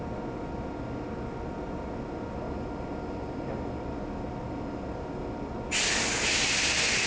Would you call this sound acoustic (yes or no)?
yes